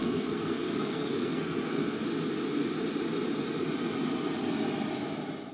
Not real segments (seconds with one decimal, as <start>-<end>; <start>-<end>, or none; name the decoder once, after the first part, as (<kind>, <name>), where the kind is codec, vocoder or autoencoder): 0.0-2.0 (codec, SNAC)